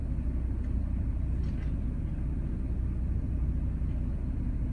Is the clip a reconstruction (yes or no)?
no